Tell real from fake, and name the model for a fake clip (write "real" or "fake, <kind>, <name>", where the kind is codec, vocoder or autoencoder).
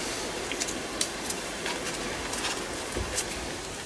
real